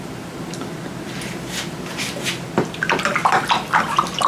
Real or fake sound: real